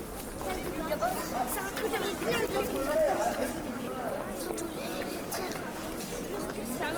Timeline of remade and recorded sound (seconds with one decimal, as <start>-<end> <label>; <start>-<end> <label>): 0.0-2.8 recorded; 2.8-4.1 remade; 4.1-4.9 recorded; 4.9-6.1 remade; 6.1-7.0 recorded